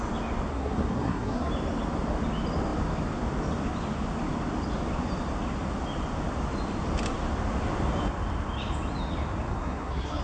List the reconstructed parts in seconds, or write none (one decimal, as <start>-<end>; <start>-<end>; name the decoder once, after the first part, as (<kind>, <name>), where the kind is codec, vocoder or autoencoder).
0.5-1.5 (codec, SNAC); 9.5-10.2